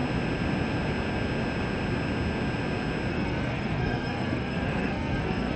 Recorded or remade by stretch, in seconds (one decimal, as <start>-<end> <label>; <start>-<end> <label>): 0.0-3.1 recorded; 3.1-5.6 remade